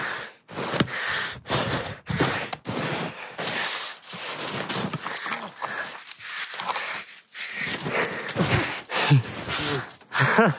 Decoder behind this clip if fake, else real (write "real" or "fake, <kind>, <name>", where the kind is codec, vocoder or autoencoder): real